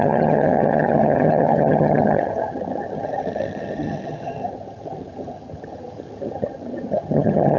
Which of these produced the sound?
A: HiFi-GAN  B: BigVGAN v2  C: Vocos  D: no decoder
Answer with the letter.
A